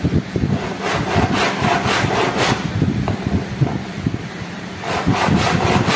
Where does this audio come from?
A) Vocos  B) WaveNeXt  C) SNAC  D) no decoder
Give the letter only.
D